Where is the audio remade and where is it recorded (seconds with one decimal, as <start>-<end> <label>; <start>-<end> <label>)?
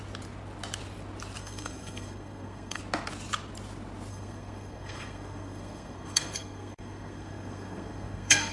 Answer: 0.0-1.4 recorded; 1.4-2.8 remade; 2.8-4.1 recorded; 4.1-8.5 remade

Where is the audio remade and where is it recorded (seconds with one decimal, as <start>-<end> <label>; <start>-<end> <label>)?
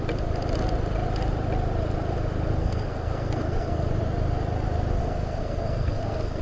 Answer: 0.0-2.6 recorded; 2.6-3.9 remade; 3.9-5.0 recorded; 5.0-6.4 remade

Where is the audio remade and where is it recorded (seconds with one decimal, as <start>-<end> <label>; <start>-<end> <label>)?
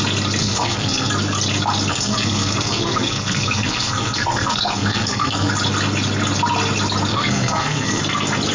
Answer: 0.0-0.4 recorded; 0.4-1.1 remade; 1.1-1.9 recorded; 1.9-5.5 remade; 5.5-7.1 recorded; 7.1-8.0 remade; 8.0-8.5 recorded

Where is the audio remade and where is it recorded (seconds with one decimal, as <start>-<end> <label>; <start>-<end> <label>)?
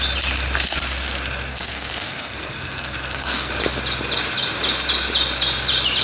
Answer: 0.0-1.5 recorded; 1.5-3.5 remade; 3.5-6.0 recorded